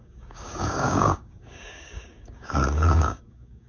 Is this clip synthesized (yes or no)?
yes